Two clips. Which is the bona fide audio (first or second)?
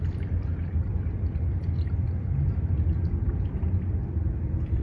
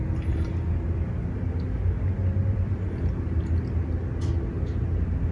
second